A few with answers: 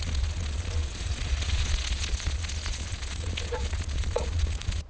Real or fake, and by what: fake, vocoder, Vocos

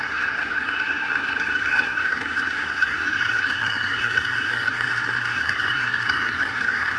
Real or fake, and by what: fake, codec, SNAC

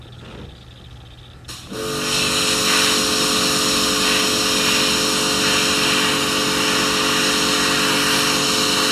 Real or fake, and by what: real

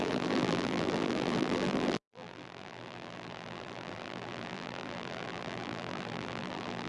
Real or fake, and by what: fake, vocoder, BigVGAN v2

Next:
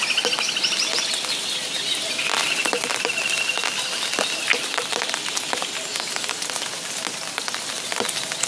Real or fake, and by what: real